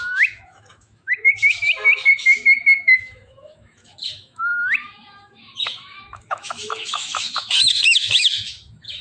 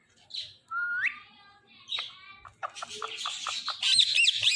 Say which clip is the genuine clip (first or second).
second